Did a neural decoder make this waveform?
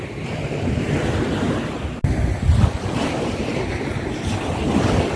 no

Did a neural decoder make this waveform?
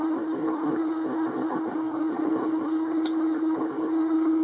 yes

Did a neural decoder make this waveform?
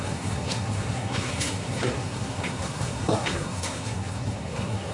yes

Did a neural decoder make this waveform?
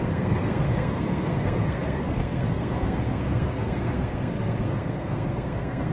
yes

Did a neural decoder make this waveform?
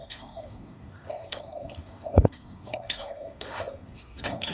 yes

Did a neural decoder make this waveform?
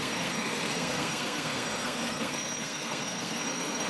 yes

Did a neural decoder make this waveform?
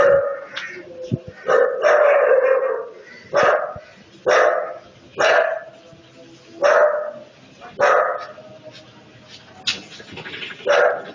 no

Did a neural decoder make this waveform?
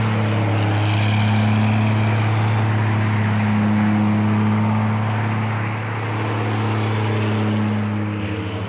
no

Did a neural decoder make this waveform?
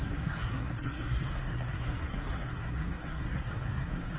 yes